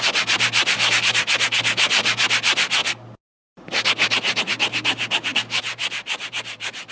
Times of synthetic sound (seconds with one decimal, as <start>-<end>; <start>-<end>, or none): none